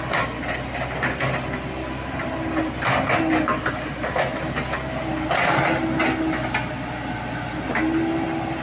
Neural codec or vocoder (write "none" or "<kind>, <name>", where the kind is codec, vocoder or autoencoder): none